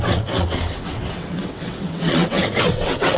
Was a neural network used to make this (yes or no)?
yes